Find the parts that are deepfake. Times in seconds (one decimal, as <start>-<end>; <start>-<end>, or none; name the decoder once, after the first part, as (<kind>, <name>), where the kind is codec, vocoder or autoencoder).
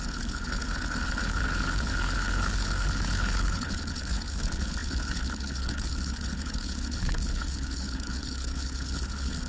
0.0-9.5 (codec, HILCodec)